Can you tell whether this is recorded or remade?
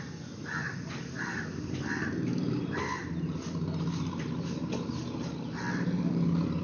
recorded